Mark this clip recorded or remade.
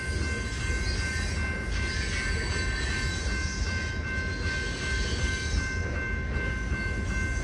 recorded